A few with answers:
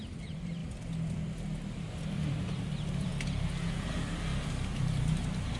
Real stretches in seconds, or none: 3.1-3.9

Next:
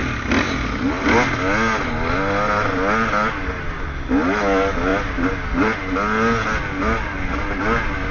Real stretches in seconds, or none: 0.0-8.1

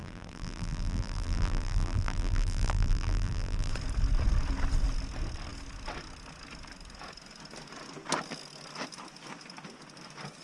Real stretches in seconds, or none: 3.7-10.4

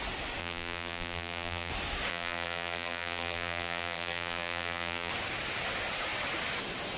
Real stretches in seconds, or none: 0.0-0.4; 1.7-2.1; 5.1-7.0

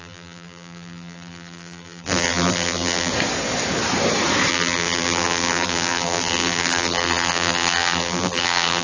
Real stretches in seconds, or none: 3.1-4.5

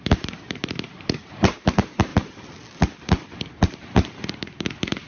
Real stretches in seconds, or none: 2.1-3.6